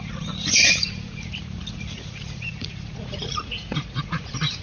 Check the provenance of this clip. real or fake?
fake